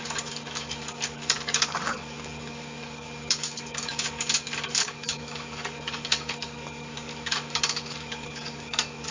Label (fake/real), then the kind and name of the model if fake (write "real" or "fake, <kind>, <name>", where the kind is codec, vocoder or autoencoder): fake, codec, DAC